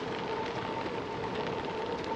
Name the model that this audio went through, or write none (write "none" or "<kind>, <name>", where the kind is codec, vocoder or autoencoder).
none